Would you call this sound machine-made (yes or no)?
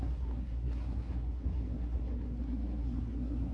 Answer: yes